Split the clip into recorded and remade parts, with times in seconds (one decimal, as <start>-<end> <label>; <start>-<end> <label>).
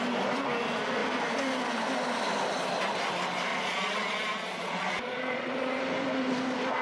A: 0.0-3.5 recorded; 3.5-5.8 remade; 5.8-6.8 recorded